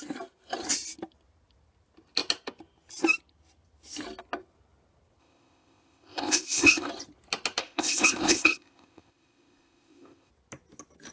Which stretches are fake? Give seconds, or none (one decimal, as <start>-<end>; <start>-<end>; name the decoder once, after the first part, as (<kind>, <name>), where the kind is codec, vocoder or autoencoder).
5.2-6.9 (codec, ZipCodec); 7.6-10.3